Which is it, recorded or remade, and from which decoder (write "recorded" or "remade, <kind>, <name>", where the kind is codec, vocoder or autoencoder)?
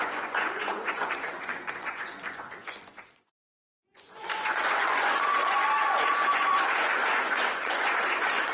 remade, vocoder, Vocos